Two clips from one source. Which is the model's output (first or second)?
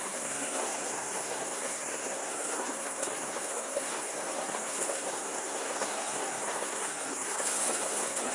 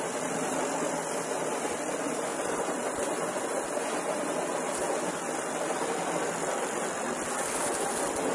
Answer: first